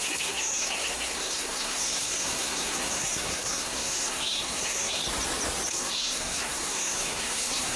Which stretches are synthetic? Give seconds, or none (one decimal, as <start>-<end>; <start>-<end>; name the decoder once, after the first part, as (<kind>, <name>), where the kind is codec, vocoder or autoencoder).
0.0-5.0 (codec, SNAC); 5.7-7.8